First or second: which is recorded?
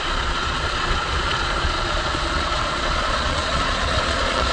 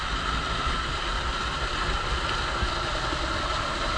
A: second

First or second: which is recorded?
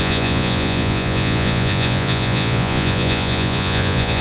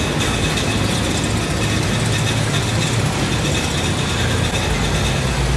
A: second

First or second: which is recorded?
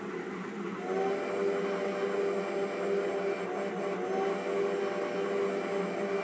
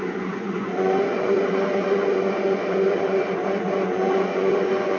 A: first